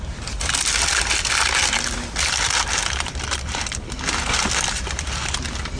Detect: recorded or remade recorded